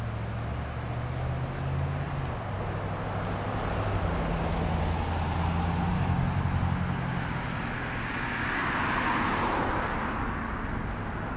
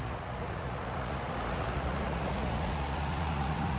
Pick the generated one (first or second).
second